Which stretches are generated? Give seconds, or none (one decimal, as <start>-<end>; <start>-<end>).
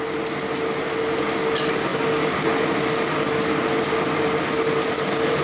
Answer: none